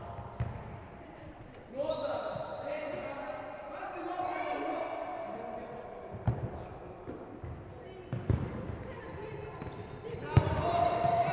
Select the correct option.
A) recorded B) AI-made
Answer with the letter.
A